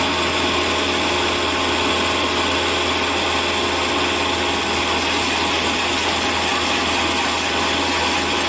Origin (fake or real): real